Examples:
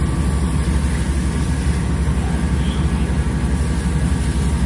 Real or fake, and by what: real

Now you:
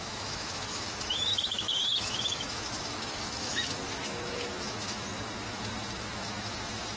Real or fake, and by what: fake, autoencoder, DAC-VAE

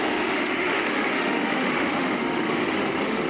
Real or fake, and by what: fake, autoencoder, DAC-VAE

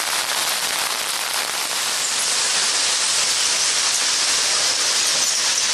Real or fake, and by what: real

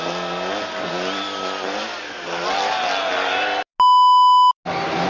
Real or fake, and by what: real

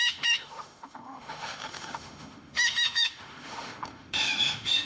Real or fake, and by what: fake, autoencoder, DAC-VAE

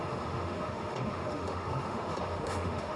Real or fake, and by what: fake, autoencoder, DAC-VAE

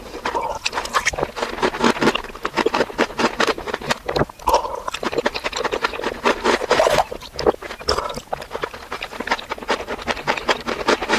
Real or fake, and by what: real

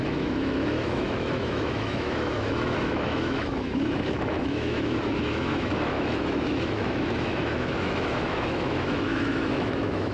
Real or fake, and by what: fake, autoencoder, DAC-VAE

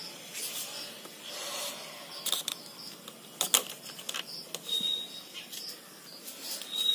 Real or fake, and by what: real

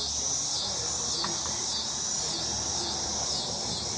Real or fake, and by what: real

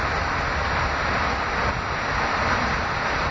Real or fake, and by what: real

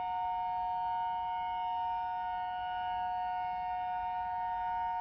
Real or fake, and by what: real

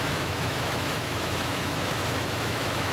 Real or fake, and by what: fake, autoencoder, DAC-VAE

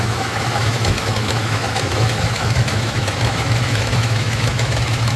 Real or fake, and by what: fake, autoencoder, DAC-VAE